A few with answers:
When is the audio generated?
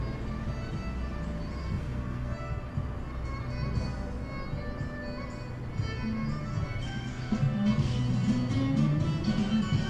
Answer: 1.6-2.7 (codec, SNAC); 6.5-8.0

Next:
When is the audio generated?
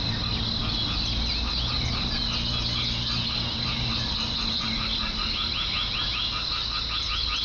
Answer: none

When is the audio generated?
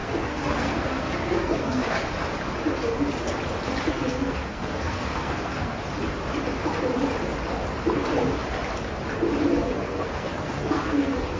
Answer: 0.0-1.8 (codec, SNAC); 3.9-5.7; 9.5-11.4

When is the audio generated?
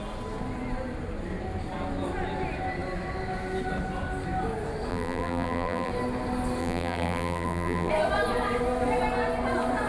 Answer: 4.9-5.9 (vocoder, BigVGAN v2); 6.6-7.9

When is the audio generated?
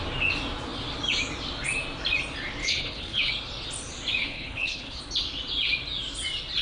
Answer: 2.6-3.3 (codec, HILCodec); 4.2-5.0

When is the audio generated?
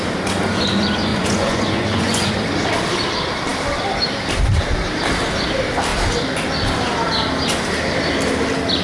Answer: 1.1-2.3 (vocoder, Vocos)